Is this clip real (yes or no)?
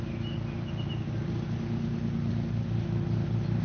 yes